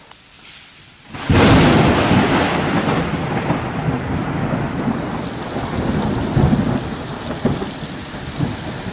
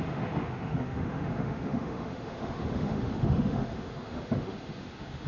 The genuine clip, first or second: first